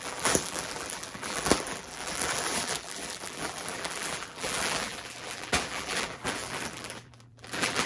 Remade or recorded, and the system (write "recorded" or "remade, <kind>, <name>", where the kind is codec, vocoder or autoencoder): remade, vocoder, BigVGAN v2